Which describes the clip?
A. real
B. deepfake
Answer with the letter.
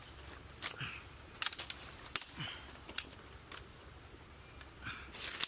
A